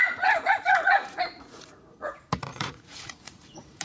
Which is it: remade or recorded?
remade